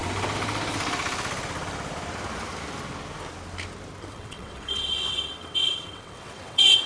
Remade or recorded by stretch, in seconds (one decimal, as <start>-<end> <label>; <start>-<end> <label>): 0.0-4.1 recorded; 4.1-6.9 remade